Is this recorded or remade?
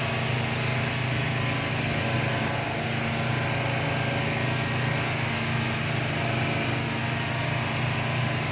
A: recorded